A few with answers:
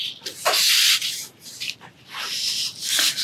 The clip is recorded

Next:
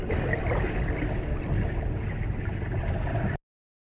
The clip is recorded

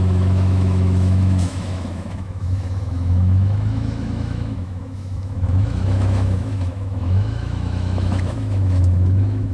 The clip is remade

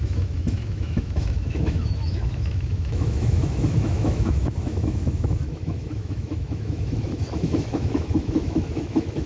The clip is remade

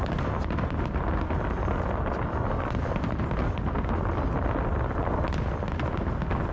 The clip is recorded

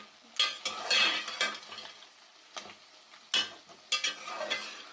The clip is recorded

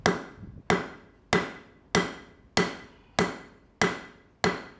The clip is recorded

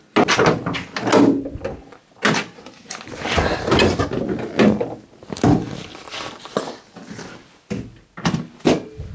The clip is recorded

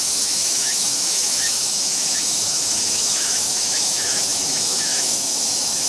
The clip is remade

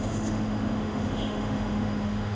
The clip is remade